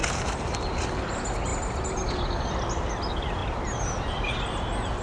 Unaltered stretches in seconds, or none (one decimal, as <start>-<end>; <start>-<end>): 0.6-1.5; 2.1-5.0